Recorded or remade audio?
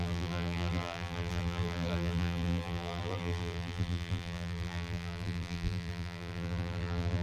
remade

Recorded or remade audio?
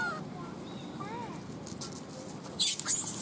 recorded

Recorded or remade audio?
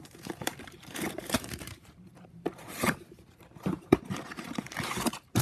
remade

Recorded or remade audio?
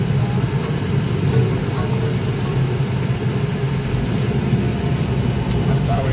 recorded